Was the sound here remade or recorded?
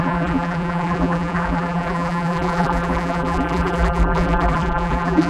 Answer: remade